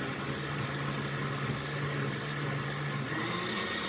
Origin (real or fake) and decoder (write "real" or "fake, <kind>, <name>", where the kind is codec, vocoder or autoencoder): real